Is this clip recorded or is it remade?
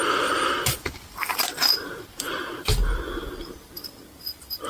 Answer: recorded